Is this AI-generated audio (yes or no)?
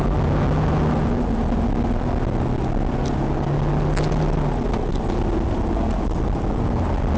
no